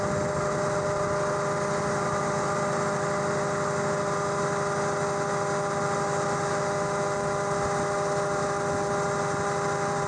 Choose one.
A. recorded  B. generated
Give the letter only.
A